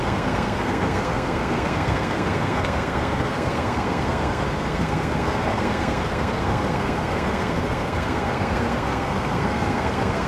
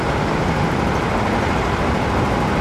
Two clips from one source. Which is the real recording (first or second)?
second